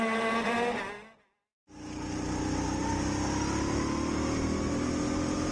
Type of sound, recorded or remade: recorded